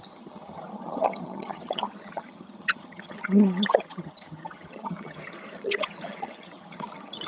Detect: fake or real fake